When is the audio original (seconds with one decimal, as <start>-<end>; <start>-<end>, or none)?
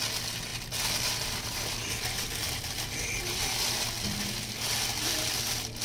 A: 0.0-0.5; 3.4-5.8